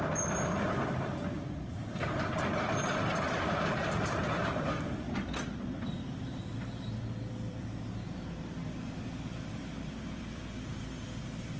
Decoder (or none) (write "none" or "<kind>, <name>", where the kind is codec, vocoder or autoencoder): vocoder, BigVGAN v2